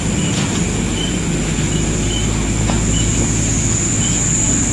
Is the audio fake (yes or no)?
no